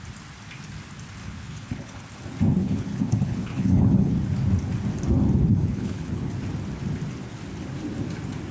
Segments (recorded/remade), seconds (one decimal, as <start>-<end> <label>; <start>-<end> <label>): 0.0-1.2 recorded; 1.2-2.0 remade; 2.0-2.6 recorded; 2.6-4.1 remade; 4.1-5.5 recorded; 5.5-6.3 remade; 6.3-8.5 recorded